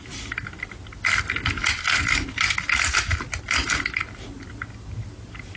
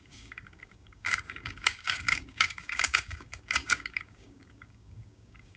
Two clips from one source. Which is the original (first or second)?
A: first